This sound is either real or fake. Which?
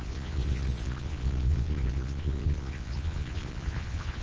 fake